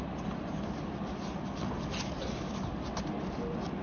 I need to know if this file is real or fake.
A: real